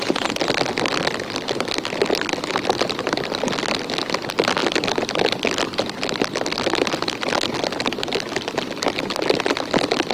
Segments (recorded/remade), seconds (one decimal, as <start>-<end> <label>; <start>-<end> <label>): 0.0-10.1 recorded